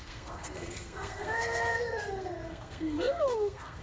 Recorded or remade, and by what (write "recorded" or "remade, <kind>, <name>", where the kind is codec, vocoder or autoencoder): remade, codec, SNAC